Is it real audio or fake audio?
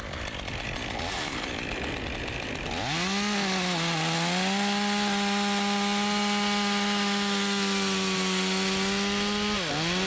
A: real